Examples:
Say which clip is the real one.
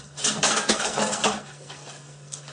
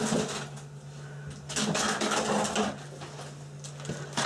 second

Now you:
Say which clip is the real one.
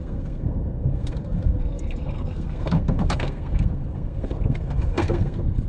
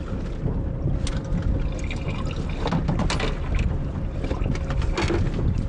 second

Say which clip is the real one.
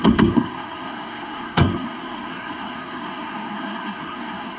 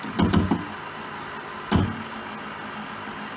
second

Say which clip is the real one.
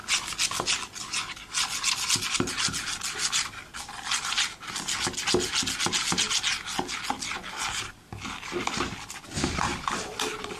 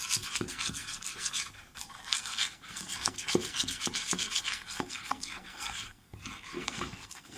first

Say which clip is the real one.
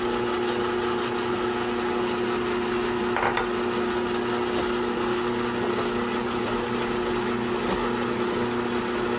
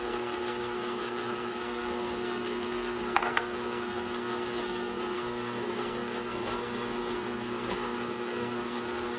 first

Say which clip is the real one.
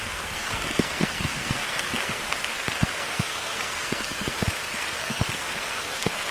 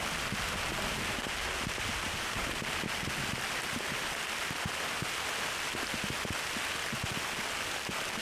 second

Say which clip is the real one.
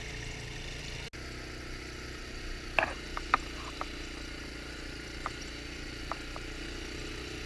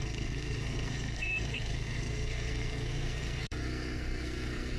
first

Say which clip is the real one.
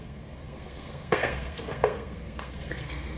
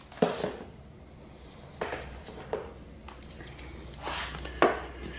second